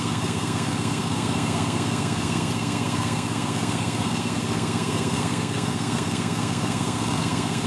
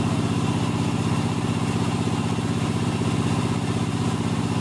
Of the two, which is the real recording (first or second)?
second